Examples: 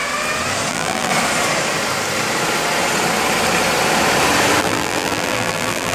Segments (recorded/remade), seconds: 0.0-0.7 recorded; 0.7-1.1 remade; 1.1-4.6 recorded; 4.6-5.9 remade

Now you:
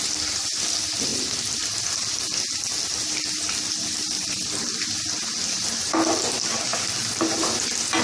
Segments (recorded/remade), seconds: 0.0-1.1 recorded; 1.1-5.9 remade; 5.9-6.7 recorded; 6.7-7.4 remade; 7.4-8.0 recorded

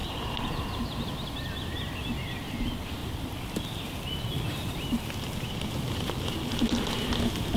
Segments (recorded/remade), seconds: 0.0-1.0 remade; 1.0-3.0 recorded; 3.0-7.6 remade

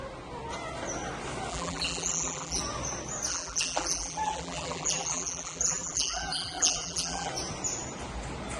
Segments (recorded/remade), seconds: 0.0-1.5 recorded; 1.5-2.6 remade; 2.6-3.3 recorded; 3.3-7.3 remade; 7.3-8.6 recorded